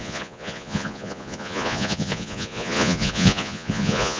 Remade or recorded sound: remade